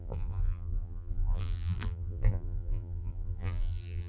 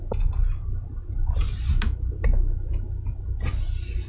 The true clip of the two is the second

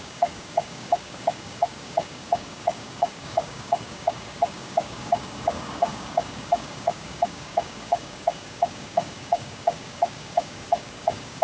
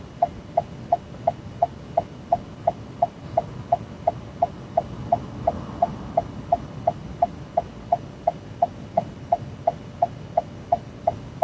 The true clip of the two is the second